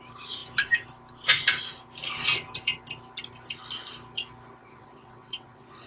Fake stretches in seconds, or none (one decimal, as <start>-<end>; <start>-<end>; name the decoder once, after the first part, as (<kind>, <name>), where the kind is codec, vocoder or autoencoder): 4.6-5.9 (vocoder, WaveNeXt)